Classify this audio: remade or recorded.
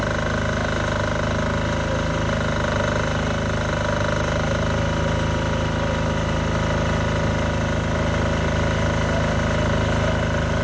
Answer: recorded